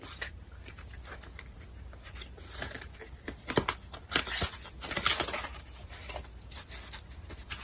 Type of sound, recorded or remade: recorded